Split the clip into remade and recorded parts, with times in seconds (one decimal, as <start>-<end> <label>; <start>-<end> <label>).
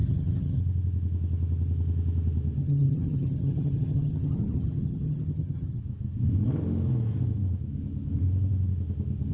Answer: 0.0-0.6 remade; 0.6-2.6 recorded; 2.6-5.8 remade; 5.8-9.3 recorded